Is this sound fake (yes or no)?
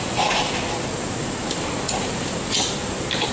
no